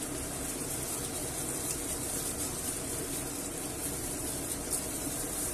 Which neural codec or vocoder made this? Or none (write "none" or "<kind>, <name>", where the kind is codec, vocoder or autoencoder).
vocoder, BigVGAN v2